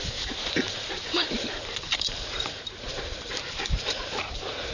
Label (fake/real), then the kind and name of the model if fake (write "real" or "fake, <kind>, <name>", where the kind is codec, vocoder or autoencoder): fake, vocoder, BigVGAN v2